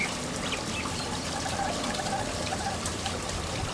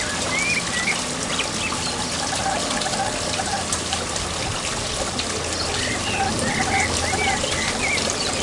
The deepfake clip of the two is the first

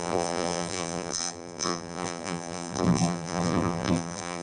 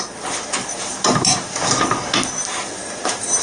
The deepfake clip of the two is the first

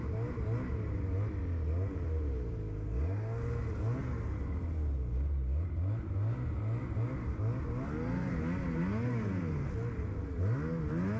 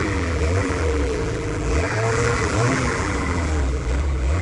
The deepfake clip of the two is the second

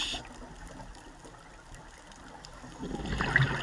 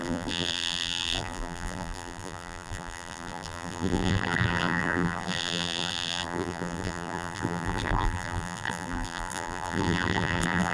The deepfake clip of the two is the second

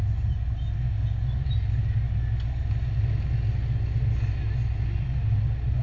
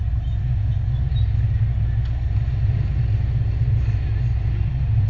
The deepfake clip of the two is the second